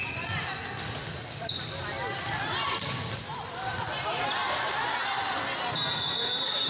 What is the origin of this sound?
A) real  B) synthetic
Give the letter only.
A